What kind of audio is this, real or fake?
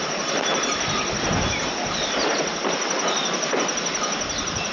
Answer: real